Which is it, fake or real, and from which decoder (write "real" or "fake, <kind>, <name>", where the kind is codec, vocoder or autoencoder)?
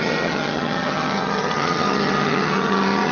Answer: fake, vocoder, HiFi-GAN